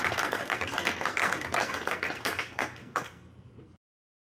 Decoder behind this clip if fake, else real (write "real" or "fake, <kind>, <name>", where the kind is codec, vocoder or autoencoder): fake, codec, SNAC